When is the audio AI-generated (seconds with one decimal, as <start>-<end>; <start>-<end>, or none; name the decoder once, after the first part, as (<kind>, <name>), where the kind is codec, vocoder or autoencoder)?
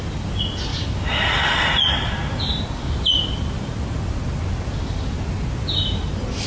0.7-4.6 (vocoder, BigVGAN v2)